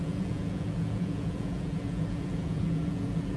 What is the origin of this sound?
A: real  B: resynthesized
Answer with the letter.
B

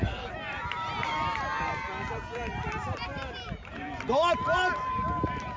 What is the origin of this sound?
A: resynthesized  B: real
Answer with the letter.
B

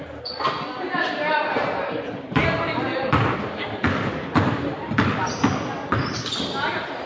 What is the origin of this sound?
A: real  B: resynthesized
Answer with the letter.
A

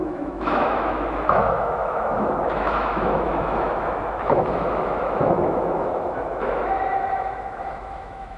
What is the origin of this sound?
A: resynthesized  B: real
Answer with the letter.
A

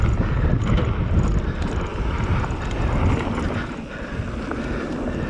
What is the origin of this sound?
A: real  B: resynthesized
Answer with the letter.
A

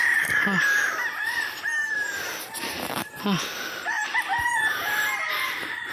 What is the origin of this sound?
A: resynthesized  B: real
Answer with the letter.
A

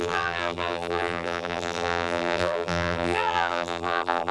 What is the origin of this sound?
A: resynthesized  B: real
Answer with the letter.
A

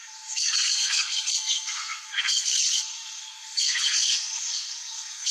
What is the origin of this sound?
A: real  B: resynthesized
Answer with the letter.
B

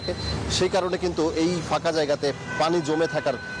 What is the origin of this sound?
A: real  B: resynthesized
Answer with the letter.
A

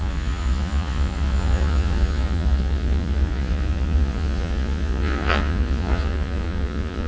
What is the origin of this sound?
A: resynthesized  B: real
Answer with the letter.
A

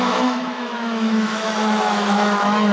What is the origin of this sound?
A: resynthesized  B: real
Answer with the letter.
A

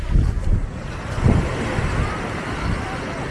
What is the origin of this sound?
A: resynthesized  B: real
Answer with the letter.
B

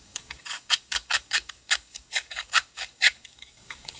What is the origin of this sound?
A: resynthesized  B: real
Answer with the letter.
A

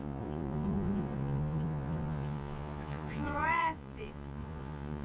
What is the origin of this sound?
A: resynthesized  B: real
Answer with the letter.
A